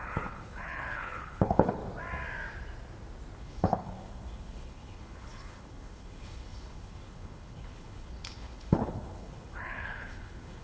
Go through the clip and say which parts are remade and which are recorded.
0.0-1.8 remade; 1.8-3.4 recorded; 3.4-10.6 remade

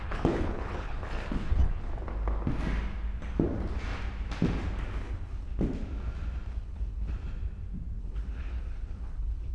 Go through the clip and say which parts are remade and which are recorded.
0.0-1.9 remade; 1.9-5.0 recorded; 5.0-5.5 remade; 5.5-6.5 recorded; 6.5-7.1 remade; 7.1-8.0 recorded; 8.0-9.5 remade

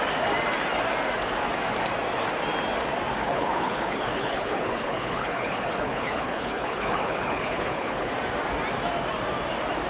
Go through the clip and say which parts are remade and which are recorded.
0.0-3.2 recorded; 3.2-8.1 remade; 8.1-9.9 recorded

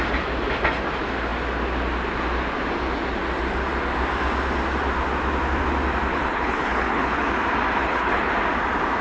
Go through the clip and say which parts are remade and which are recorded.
0.0-6.1 recorded; 6.1-7.3 remade; 7.3-7.8 recorded; 7.8-8.3 remade; 8.3-9.0 recorded

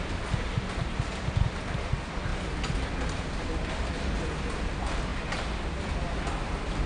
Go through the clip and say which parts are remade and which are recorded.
0.0-6.9 recorded

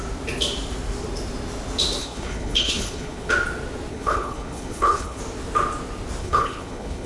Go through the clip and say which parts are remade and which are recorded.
0.0-2.0 recorded; 2.0-3.3 remade; 3.3-3.9 recorded; 3.9-5.2 remade; 5.2-6.2 recorded; 6.2-7.1 remade